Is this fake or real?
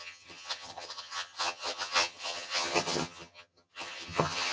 fake